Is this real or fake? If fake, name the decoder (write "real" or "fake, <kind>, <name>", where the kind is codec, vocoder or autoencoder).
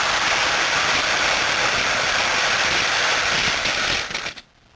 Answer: fake, vocoder, BigVGAN v2